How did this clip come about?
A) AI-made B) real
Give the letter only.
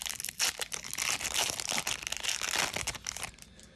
B